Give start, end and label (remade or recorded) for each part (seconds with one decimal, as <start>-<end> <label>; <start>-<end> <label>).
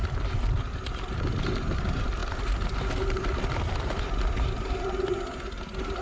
0.0-6.0 recorded